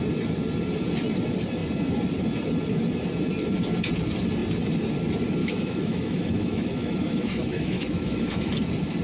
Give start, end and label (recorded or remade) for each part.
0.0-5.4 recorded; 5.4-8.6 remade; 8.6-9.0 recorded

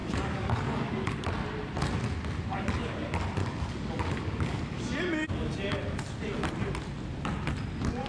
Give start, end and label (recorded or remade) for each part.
0.0-0.9 remade; 0.9-3.4 recorded; 3.4-4.8 remade; 4.8-8.1 recorded